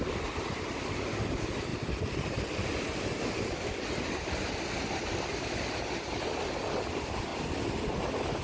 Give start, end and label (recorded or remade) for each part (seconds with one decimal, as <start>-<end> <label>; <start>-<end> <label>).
0.0-8.4 recorded